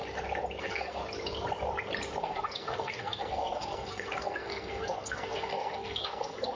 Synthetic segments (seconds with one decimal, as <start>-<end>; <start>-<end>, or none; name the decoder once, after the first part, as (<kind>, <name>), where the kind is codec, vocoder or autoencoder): 0.6-1.0 (codec, SNAC); 2.2-6.6